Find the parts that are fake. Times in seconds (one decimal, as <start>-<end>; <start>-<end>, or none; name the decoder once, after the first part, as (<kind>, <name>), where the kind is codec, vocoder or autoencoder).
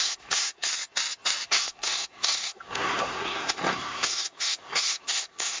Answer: 0.0-0.7 (codec, SNAC); 1.5-5.6